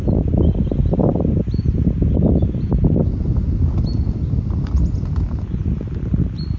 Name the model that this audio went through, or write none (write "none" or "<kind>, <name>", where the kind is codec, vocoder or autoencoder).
none